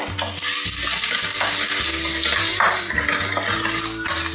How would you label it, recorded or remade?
recorded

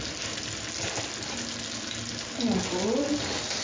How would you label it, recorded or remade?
recorded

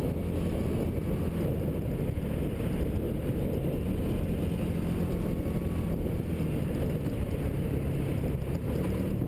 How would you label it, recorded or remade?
recorded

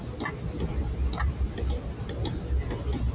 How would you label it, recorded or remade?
recorded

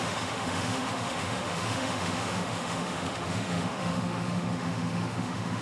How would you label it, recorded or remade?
remade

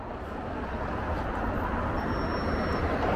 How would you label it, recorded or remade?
recorded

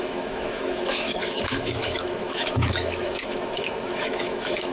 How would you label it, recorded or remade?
remade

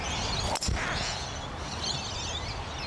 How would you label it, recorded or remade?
recorded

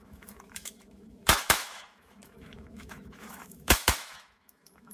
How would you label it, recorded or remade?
remade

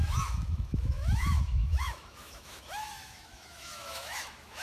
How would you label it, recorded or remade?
remade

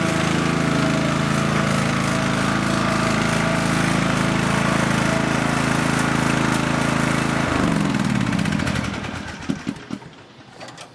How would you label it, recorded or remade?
recorded